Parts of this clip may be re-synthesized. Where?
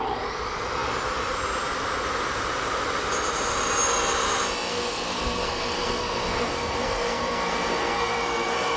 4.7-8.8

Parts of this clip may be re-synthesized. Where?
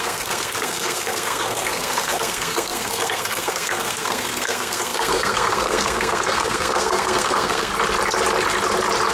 0.0-7.7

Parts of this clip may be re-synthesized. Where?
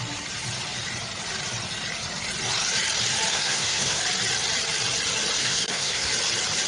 3.3-4.0; 5.4-6.1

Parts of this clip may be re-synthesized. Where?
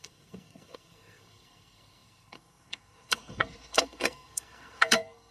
0.0-5.3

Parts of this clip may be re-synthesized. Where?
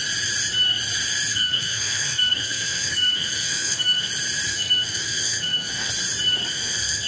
1.3-4.1; 4.5-5.9; 6.4-7.1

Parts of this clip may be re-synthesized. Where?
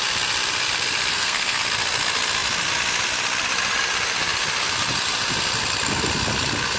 1.1-1.6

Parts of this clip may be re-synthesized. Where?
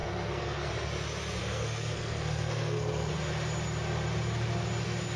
0.0-0.7; 1.4-3.1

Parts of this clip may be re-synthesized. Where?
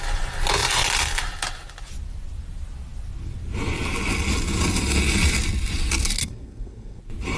6.2-7.0